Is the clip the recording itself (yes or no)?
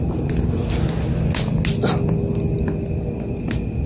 yes